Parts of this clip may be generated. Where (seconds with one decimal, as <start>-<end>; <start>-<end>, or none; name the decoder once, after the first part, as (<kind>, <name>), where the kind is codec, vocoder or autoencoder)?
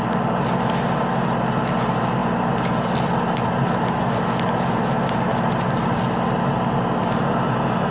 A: none